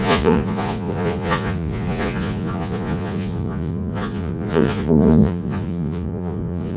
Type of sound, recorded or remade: remade